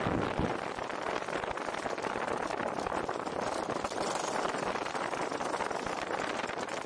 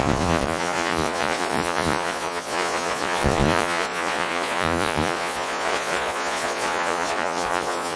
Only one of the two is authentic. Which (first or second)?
first